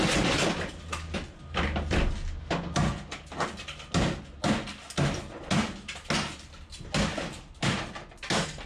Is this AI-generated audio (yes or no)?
no